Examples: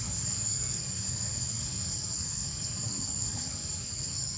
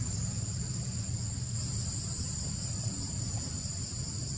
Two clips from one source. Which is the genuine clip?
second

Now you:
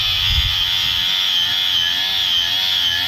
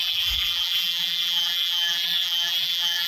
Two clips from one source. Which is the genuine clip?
first